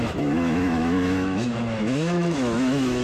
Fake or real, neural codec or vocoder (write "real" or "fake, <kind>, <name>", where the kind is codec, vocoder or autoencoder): fake, autoencoder, DAC-VAE